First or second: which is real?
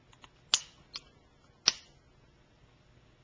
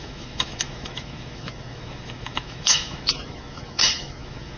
first